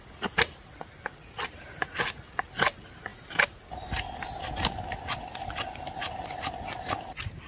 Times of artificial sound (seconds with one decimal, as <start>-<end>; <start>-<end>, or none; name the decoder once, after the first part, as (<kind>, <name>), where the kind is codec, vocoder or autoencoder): none